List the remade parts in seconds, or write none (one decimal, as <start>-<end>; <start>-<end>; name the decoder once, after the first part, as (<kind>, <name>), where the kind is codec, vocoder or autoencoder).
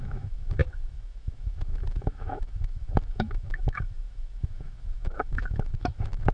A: 0.0-6.3 (autoencoder, DAC-VAE)